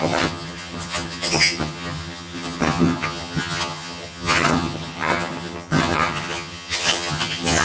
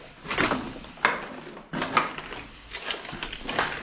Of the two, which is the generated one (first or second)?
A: first